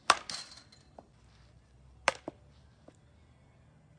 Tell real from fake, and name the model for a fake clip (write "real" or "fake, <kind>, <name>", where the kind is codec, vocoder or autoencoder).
real